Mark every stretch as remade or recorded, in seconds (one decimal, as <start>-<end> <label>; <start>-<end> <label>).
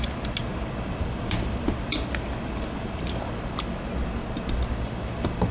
0.0-0.5 recorded; 0.5-3.8 remade; 3.8-5.5 recorded